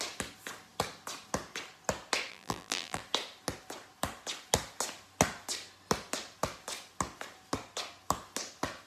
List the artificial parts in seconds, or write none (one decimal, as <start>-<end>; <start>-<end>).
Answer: 2.3-3.0